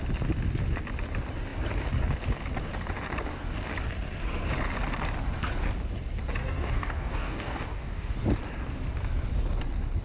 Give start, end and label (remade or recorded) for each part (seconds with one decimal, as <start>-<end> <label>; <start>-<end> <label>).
0.0-6.4 recorded; 6.4-8.1 remade; 8.1-10.0 recorded